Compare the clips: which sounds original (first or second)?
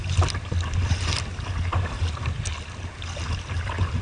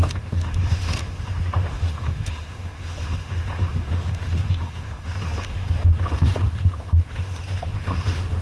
first